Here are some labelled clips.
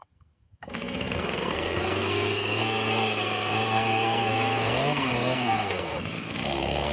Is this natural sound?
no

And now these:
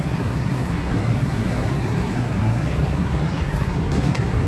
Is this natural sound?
no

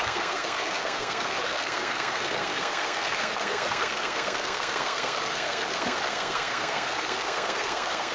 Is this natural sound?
no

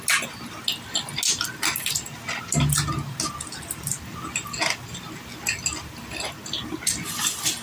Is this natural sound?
yes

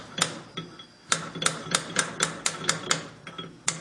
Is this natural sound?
yes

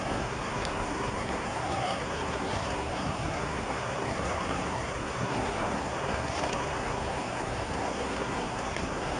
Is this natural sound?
no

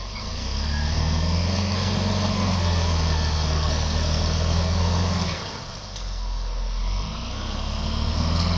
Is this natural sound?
no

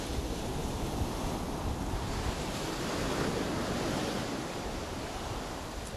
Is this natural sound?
yes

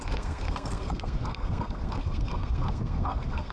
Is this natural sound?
no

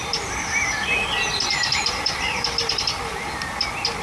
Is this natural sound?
yes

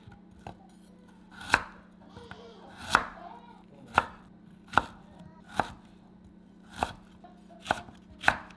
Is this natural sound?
yes